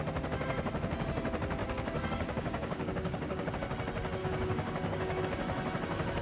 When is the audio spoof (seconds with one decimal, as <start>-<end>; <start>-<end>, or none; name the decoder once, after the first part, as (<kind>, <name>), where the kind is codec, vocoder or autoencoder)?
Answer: 1.6-3.5 (codec, DAC); 4.2-5.2